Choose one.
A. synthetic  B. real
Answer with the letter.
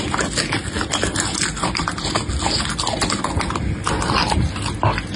B